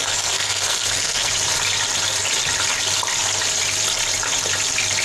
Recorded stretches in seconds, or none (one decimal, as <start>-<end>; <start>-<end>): 1.3-5.0